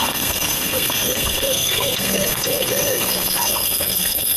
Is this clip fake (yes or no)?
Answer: yes